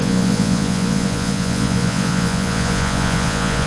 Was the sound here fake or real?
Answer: fake